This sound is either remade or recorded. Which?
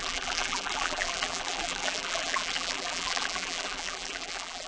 remade